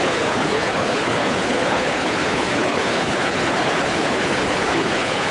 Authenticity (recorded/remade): remade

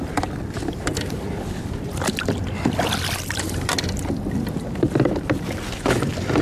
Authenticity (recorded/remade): remade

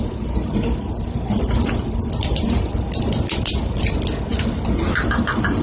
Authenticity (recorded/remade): recorded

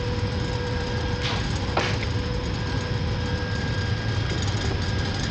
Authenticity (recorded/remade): recorded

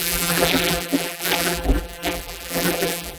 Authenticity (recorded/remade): remade